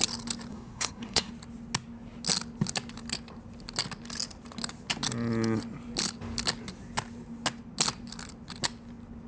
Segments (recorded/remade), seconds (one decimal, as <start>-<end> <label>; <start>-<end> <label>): 0.0-0.5 recorded; 0.5-1.3 remade; 1.3-9.3 recorded